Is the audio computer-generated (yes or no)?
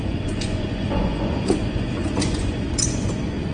yes